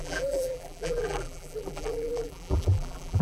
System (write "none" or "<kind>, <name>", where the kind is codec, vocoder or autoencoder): vocoder, BigVGAN v2